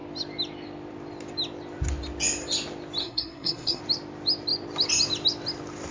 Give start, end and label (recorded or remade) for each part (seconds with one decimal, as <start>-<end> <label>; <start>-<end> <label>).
0.0-3.0 recorded; 3.0-3.8 remade; 3.8-5.9 recorded